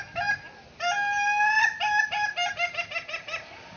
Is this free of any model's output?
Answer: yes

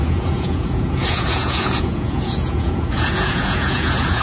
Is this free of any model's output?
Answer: no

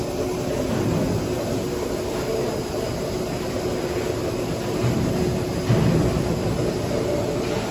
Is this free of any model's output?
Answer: yes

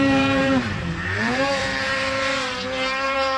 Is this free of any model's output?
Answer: no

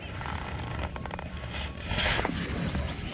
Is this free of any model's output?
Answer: yes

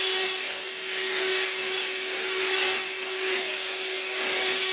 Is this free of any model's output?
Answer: no